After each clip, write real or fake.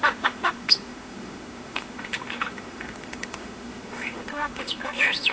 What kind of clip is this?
fake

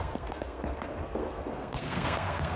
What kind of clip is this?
fake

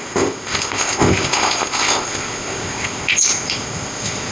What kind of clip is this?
fake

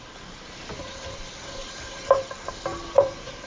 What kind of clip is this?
real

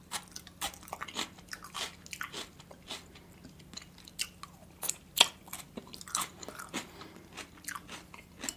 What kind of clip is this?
real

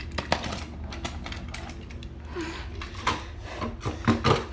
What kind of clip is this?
real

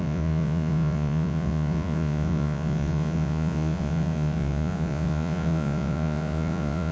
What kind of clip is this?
fake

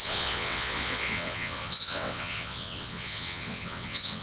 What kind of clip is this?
fake